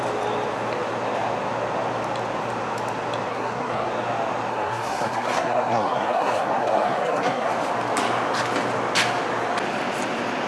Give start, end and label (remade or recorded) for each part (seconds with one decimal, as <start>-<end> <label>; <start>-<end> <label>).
0.0-3.3 recorded; 3.3-3.9 remade; 3.9-4.5 recorded; 4.5-7.5 remade; 7.5-10.5 recorded